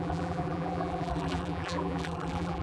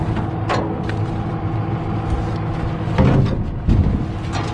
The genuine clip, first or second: second